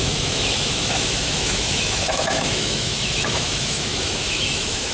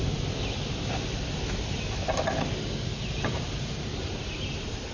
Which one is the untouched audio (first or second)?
second